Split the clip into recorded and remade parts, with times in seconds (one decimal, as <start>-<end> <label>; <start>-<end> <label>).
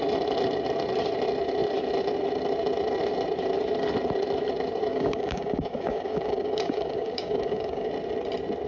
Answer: 0.0-4.9 recorded; 4.9-7.9 remade; 7.9-8.7 recorded